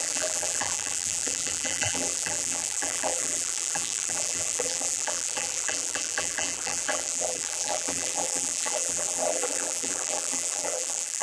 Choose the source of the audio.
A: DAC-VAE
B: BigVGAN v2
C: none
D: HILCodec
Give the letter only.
B